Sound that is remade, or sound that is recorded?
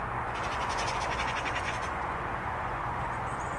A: remade